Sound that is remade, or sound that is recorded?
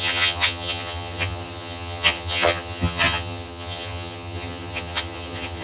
remade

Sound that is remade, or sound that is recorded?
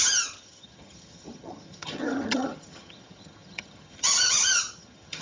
remade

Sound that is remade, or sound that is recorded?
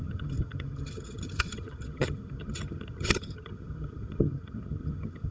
remade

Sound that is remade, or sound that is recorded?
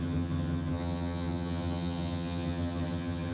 remade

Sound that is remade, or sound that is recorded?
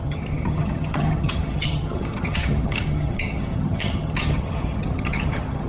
remade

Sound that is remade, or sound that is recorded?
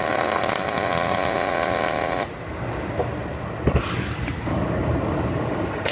recorded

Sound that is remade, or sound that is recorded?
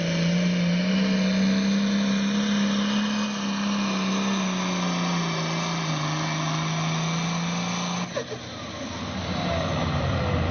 recorded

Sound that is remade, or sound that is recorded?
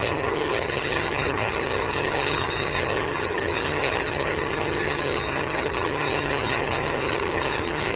remade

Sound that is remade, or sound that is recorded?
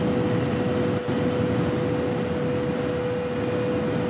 recorded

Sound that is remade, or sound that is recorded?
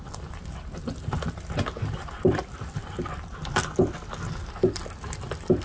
recorded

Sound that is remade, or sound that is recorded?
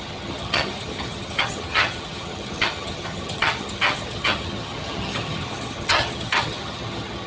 remade